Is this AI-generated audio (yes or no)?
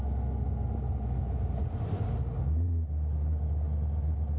no